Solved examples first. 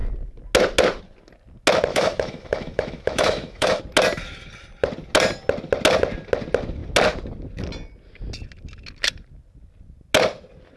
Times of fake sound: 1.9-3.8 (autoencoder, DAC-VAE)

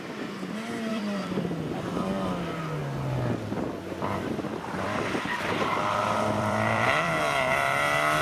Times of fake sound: 0.9-2.4 (vocoder, BigVGAN v2); 4.5-7.1

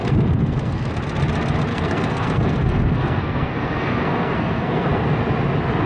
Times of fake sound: 0.0-0.9 (codec, SNAC); 1.7-5.2

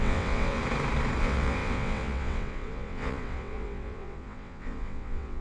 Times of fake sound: 0.0-0.6 (vocoder, WaveNeXt); 1.2-5.4

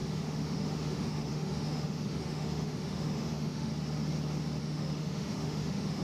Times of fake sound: 0.0-3.7 (autoencoder, DAC-VAE); 4.6-6.0

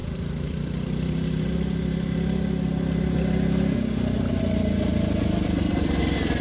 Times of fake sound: 0.0-1.5 (vocoder, BigVGAN v2)